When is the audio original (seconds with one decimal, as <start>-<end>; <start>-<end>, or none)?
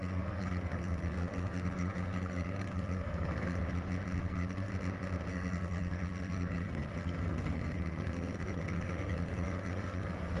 3.6-4.2; 4.7-5.3